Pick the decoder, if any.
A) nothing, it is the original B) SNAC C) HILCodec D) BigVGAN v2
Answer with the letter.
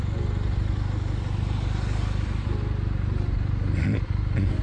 A